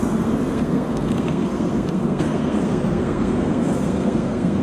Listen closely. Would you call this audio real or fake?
fake